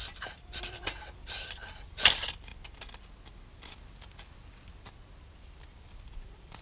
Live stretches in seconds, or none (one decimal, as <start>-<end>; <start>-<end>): 2.5-5.2